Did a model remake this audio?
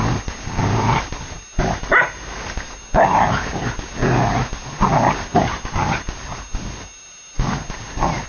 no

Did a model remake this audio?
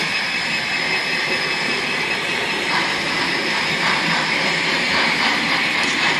yes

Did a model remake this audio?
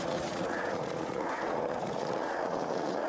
yes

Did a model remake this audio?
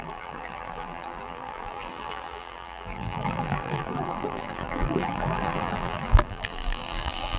yes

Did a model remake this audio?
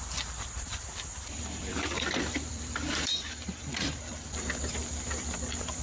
yes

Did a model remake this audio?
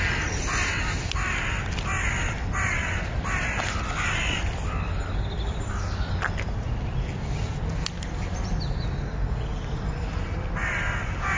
no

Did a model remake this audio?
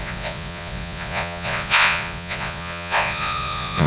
yes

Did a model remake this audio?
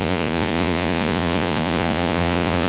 yes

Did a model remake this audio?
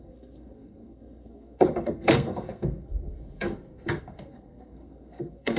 yes